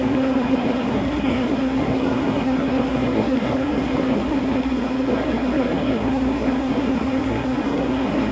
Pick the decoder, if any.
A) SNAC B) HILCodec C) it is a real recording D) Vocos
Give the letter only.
A